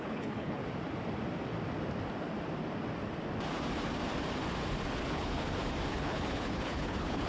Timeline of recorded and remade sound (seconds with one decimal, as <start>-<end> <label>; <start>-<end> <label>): 0.0-0.6 remade; 0.6-5.0 recorded; 5.0-5.4 remade; 5.4-5.9 recorded; 5.9-7.3 remade